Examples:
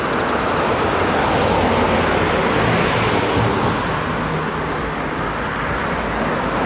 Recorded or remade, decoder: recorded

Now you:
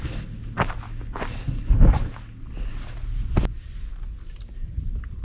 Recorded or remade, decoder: recorded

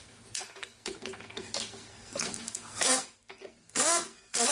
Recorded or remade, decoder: remade, codec, SNAC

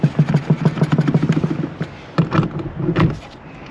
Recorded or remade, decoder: recorded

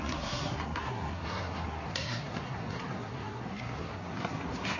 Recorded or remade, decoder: remade, codec, SNAC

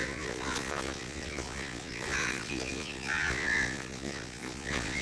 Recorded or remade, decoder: remade, vocoder, Vocos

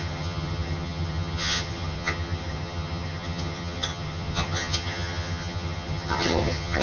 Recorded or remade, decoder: remade, vocoder, HiFi-GAN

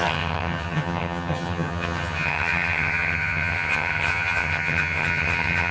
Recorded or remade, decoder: remade, vocoder, HiFi-GAN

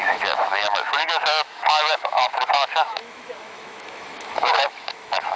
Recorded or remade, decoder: remade, autoencoder, DAC-VAE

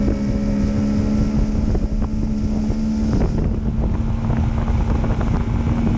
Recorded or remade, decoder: recorded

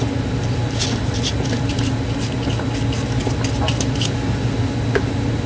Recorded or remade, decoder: recorded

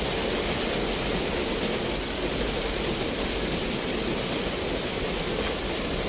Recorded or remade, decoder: recorded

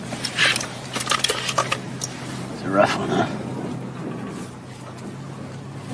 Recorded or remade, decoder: recorded